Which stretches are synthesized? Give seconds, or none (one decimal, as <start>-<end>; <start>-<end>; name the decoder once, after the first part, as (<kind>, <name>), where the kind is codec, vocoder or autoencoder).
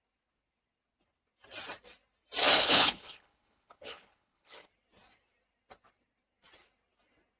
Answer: 2.4-4.7 (codec, HILCodec)